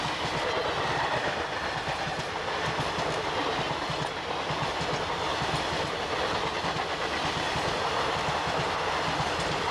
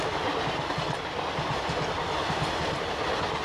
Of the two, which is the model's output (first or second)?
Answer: second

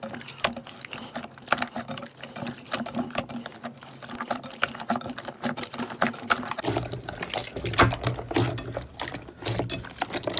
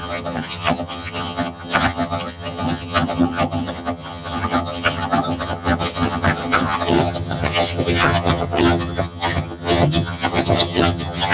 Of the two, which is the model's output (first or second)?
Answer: second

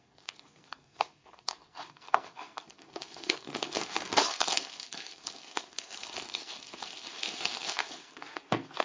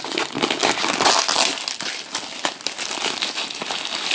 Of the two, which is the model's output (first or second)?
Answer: first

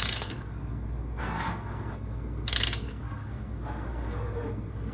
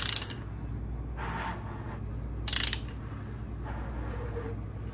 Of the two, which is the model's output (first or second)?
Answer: first